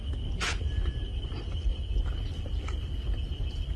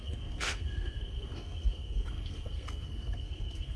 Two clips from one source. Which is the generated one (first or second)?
second